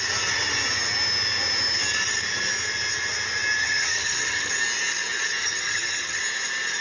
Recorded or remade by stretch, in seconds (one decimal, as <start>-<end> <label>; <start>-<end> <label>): 0.0-3.6 recorded; 3.6-4.5 remade; 4.5-5.4 recorded; 5.4-6.2 remade; 6.2-6.8 recorded